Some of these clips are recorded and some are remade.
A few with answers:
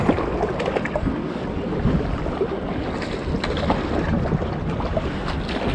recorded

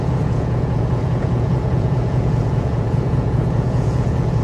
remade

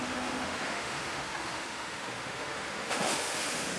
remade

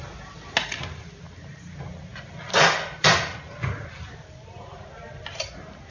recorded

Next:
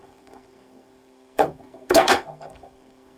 remade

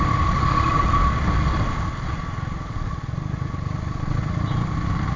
recorded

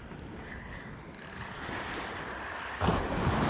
recorded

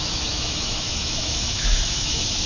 remade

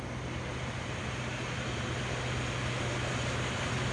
recorded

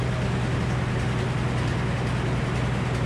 recorded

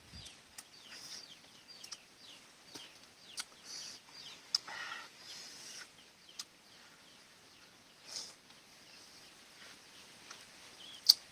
recorded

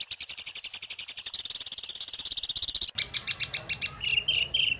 recorded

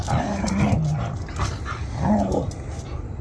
recorded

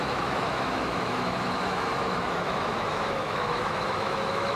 remade